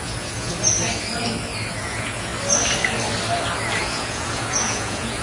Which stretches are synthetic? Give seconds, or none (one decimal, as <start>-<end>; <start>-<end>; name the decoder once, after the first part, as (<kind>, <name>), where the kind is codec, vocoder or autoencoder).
0.0-0.5 (vocoder, Vocos); 1.8-2.3; 3.8-5.2